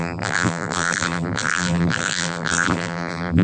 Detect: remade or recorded remade